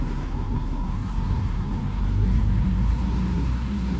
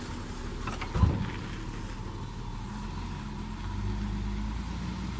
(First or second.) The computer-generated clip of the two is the first